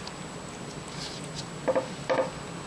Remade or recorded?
recorded